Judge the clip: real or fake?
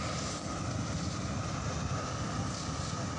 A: real